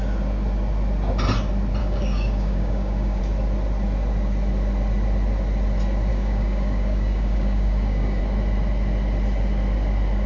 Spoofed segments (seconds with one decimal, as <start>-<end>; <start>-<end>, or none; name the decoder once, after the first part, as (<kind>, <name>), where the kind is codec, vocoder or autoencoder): 1.8-3.2 (codec, DAC); 6.1-8.2

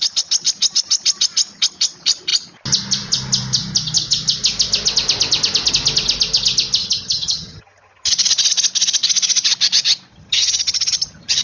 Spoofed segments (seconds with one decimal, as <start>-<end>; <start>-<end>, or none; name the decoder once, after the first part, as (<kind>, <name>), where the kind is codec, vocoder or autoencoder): 6.8-8.1 (vocoder, HiFi-GAN); 10.1-11.4

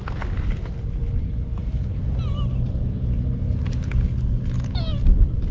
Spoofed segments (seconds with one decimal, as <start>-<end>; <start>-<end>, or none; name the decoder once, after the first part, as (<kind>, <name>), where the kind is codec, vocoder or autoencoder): none

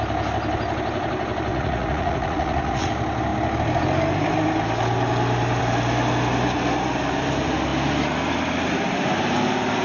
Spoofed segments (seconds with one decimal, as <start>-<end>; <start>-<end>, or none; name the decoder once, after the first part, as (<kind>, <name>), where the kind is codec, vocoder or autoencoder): 1.5-2.9 (vocoder, Vocos)

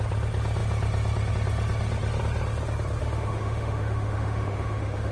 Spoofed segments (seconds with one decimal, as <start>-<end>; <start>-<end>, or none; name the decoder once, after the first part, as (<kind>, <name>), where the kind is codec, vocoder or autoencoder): 3.0-5.1 (autoencoder, DAC-VAE)

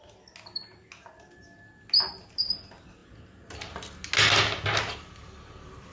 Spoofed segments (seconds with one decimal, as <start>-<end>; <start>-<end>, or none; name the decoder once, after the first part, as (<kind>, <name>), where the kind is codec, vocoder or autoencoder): none

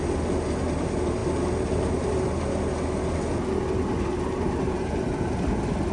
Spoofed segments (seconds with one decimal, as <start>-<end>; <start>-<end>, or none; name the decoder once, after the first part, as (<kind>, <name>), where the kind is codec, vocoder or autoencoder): none